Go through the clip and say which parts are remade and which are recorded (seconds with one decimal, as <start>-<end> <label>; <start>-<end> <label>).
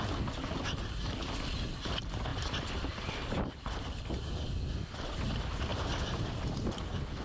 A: 0.0-2.3 recorded; 2.3-3.5 remade; 3.5-5.7 recorded; 5.7-6.7 remade; 6.7-7.2 recorded